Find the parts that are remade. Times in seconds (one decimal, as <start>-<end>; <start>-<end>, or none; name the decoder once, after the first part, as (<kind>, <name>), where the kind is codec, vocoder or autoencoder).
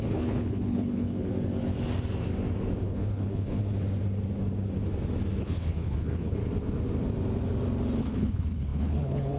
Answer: 0.0-1.3 (codec, HILCodec); 2.8-3.6; 5.4-6.4; 8.0-9.4